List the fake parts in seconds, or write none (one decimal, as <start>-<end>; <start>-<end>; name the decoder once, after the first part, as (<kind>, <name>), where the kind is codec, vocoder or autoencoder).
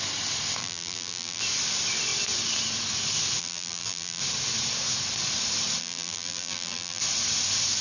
0.6-1.4 (vocoder, BigVGAN v2); 3.4-4.2; 5.8-7.0